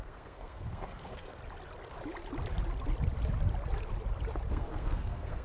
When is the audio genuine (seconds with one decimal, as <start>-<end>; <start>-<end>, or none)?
1.4-4.5